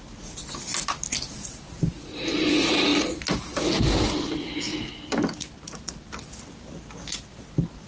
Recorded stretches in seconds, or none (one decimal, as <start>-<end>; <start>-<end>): 0.0-7.9